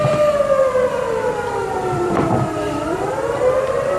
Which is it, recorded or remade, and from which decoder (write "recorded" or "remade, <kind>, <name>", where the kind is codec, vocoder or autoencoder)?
remade, vocoder, BigVGAN v2